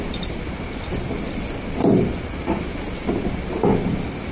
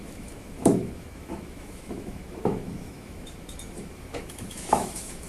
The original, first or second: first